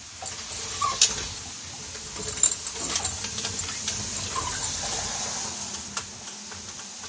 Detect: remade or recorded recorded